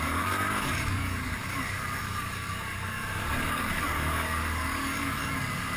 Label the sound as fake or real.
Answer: fake